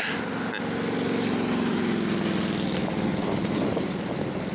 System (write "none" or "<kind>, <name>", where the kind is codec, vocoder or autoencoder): none